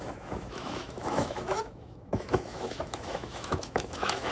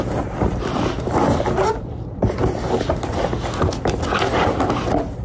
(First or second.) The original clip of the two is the second